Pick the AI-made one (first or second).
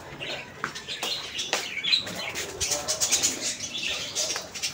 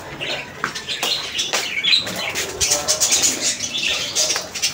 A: first